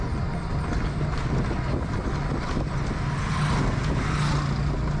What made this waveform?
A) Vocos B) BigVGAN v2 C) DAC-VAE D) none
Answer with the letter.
D